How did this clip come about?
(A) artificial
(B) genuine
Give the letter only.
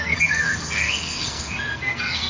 A